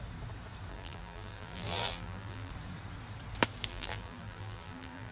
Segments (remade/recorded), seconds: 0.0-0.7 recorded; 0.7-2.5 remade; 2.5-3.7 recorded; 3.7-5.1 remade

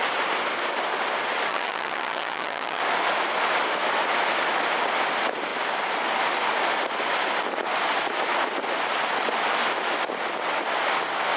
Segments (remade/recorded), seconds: 0.0-1.5 recorded; 1.5-2.8 remade; 2.8-11.4 recorded

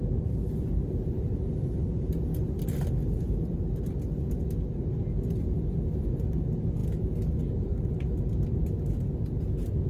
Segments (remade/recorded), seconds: 0.0-9.9 recorded

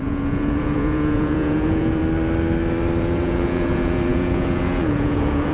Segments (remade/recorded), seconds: 0.0-2.0 remade; 2.0-3.0 recorded; 3.0-5.5 remade

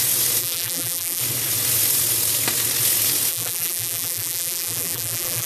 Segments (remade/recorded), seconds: 0.0-0.4 recorded; 0.4-1.2 remade; 1.2-3.3 recorded; 3.3-5.5 remade